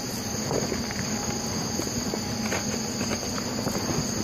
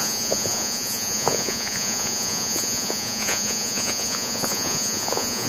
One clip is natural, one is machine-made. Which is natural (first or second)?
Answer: first